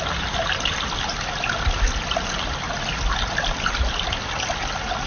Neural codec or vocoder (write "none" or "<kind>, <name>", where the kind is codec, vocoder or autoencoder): none